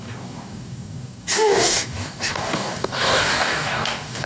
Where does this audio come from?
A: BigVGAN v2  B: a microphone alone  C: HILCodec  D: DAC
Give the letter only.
D